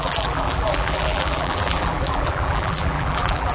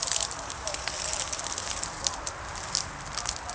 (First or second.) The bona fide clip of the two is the second